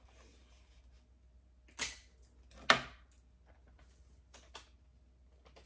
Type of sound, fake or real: real